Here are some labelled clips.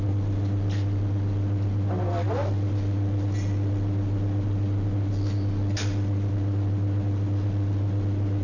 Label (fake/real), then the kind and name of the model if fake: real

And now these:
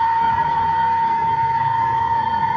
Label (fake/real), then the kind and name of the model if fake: fake, codec, SNAC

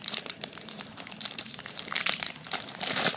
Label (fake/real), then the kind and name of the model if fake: fake, vocoder, BigVGAN v2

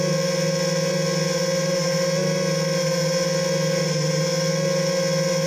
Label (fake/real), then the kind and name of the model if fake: real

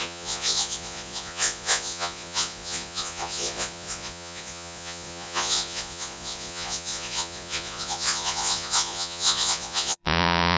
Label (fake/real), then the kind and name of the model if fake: fake, vocoder, Vocos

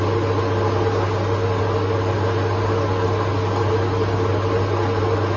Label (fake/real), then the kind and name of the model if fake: real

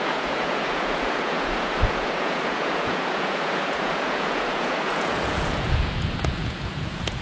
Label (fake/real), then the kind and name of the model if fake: fake, vocoder, Vocos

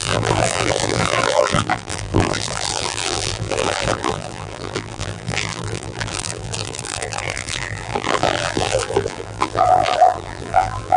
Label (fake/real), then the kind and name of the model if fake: fake, vocoder, BigVGAN v2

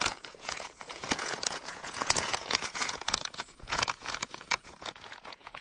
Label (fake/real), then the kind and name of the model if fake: fake, vocoder, Vocos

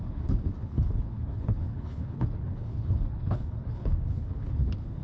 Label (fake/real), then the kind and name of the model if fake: fake, codec, HILCodec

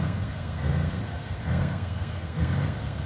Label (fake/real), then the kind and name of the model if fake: fake, codec, SNAC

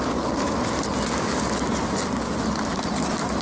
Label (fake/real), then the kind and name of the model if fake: real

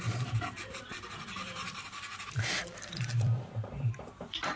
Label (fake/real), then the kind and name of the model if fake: fake, vocoder, BigVGAN v2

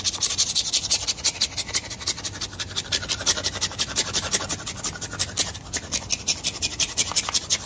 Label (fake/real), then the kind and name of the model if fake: real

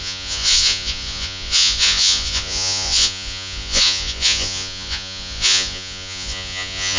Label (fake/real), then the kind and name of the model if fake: fake, vocoder, Vocos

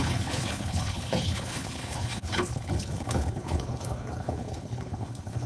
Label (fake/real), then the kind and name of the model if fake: fake, codec, HILCodec